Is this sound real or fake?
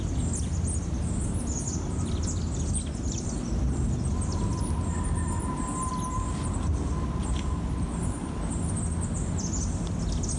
real